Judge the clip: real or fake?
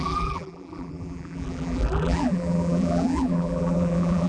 fake